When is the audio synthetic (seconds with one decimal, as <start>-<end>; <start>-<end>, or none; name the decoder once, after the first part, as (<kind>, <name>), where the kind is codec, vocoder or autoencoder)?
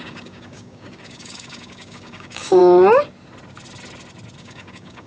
0.0-2.6 (codec, DAC); 4.4-5.1